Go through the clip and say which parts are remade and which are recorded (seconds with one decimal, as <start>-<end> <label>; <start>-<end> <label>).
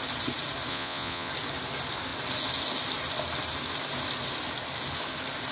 0.0-0.7 recorded; 0.7-1.3 remade; 1.3-5.5 recorded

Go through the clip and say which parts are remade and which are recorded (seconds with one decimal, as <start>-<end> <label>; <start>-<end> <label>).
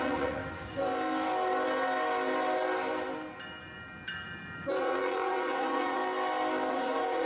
0.0-0.4 remade; 0.4-4.8 recorded; 4.8-6.0 remade; 6.0-6.7 recorded; 6.7-7.3 remade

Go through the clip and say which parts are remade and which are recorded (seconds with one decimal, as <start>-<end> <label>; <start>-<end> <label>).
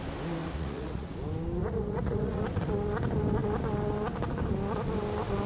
0.0-0.4 recorded; 0.4-1.1 remade; 1.1-1.6 recorded; 1.6-2.4 remade; 2.4-5.5 recorded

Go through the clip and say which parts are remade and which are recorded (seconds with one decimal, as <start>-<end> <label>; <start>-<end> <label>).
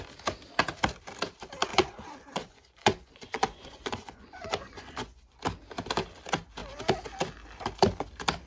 0.0-1.7 recorded; 1.7-5.4 remade; 5.4-8.5 recorded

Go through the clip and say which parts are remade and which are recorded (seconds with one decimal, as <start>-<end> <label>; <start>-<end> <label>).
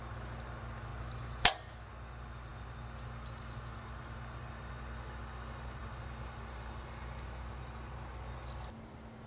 0.0-9.3 recorded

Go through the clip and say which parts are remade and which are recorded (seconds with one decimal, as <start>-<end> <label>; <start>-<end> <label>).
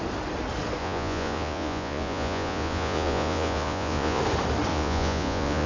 0.0-0.8 recorded; 0.8-4.2 remade; 4.2-4.7 recorded; 4.7-5.7 remade